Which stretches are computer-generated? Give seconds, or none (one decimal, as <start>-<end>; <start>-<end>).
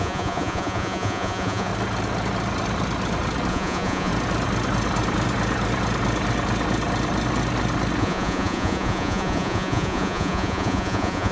0.0-1.7; 3.5-4.1; 8.0-11.3